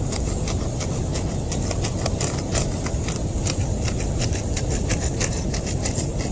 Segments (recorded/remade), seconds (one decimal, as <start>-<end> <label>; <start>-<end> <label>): 0.0-6.3 remade